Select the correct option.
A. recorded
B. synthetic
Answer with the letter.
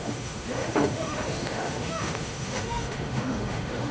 B